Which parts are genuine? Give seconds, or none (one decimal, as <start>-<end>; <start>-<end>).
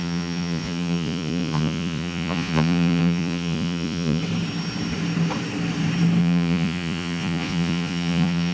4.2-6.2